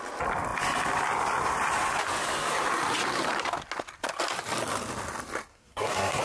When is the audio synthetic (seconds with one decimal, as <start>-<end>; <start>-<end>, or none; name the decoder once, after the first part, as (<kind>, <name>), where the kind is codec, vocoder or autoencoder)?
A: 5.5-6.2 (codec, SNAC)